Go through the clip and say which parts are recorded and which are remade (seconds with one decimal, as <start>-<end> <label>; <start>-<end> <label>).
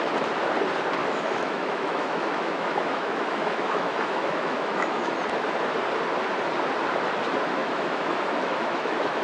0.0-1.0 recorded; 1.0-5.1 remade; 5.1-7.6 recorded; 7.6-9.2 remade